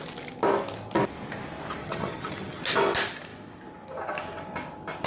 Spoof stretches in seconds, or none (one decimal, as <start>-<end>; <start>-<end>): 1.8-2.6